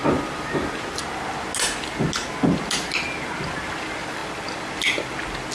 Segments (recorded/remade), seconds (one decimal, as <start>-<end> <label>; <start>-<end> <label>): 0.0-5.5 recorded